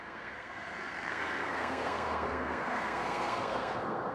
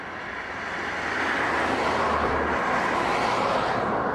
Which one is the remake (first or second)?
first